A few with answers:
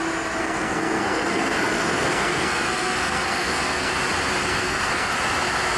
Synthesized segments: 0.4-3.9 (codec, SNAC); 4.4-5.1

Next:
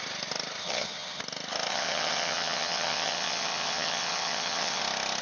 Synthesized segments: 0.6-1.2 (vocoder, HiFi-GAN); 1.7-4.8

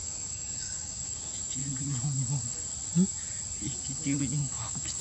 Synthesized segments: 0.0-1.6 (autoencoder, DAC-VAE); 4.2-5.0

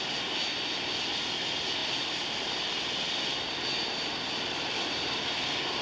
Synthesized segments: none

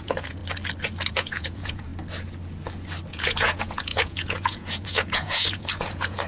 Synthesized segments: 0.0-0.4 (vocoder, Vocos); 1.1-1.9; 3.1-6.3

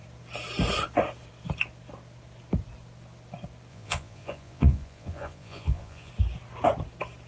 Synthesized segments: 3.7-6.1 (vocoder, Vocos)